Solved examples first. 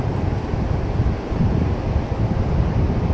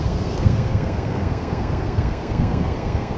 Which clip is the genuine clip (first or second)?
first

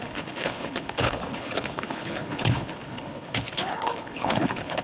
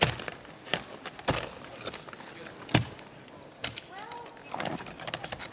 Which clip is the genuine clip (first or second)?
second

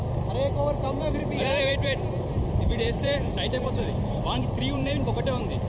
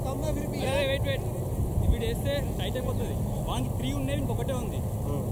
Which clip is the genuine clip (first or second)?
second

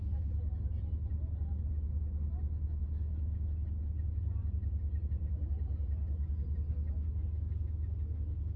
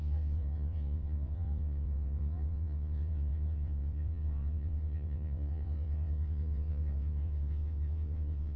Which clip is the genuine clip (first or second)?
first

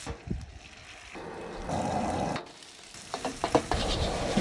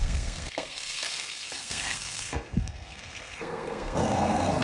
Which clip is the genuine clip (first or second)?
first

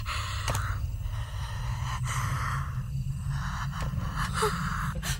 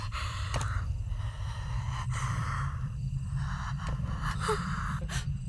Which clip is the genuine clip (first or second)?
first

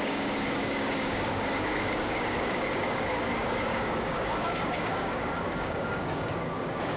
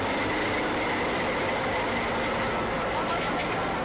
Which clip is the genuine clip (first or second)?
second